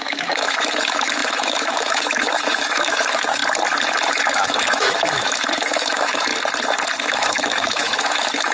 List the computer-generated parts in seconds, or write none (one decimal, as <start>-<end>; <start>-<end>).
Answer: 0.0-3.4; 4.2-6.3; 7.0-8.5